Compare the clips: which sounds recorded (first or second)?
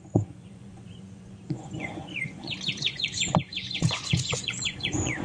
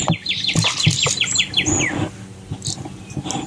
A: second